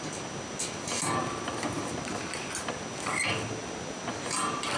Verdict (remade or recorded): recorded